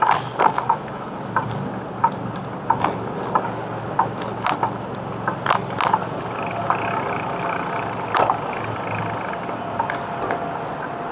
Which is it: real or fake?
real